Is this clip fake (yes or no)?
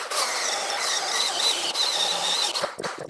no